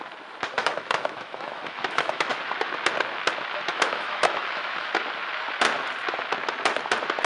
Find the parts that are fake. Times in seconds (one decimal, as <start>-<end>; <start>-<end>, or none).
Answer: 0.6-2.3; 3.7-4.9